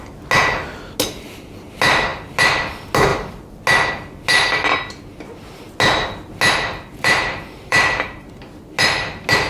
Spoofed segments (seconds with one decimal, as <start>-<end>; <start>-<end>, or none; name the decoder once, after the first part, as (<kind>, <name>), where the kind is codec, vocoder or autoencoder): 6.9-8.3 (vocoder, BigVGAN v2)